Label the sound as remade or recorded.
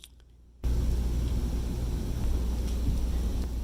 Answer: recorded